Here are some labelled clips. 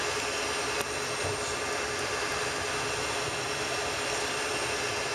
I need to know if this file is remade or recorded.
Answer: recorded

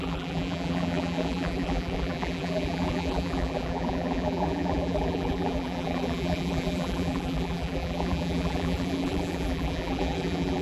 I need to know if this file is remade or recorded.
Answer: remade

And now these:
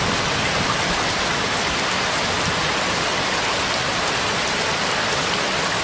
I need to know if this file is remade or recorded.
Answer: recorded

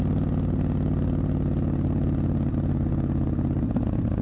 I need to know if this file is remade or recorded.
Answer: recorded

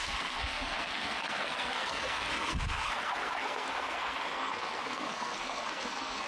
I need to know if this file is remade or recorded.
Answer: remade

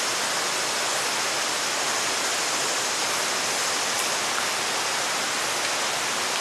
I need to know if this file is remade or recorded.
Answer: recorded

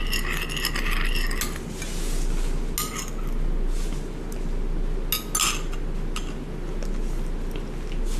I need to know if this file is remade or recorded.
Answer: recorded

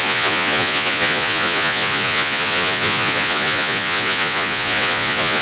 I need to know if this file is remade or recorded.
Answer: remade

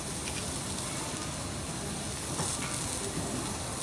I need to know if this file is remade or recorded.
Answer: recorded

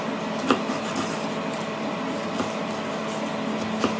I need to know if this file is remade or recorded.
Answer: recorded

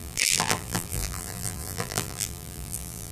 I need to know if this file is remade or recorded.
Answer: remade